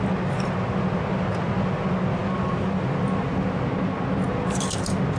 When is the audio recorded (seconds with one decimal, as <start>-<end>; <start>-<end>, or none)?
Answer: 0.0-5.2

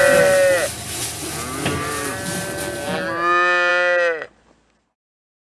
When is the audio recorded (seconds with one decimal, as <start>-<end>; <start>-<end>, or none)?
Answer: 0.0-5.6

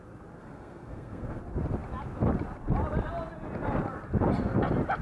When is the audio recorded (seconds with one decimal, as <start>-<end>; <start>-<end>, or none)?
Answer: 0.0-0.4; 1.4-5.0

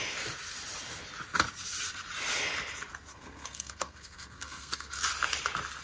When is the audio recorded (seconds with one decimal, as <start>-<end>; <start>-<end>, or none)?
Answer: 0.0-3.1; 4.9-5.8

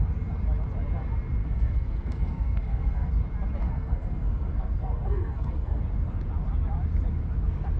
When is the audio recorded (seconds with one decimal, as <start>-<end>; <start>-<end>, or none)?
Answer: 0.0-1.4; 3.1-3.6; 5.8-7.8

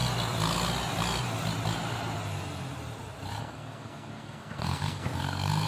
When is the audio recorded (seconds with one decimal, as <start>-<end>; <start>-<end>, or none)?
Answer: 0.0-3.4